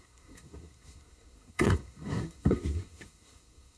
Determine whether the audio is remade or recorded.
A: remade